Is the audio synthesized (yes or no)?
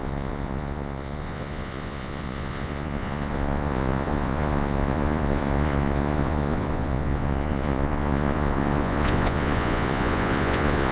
yes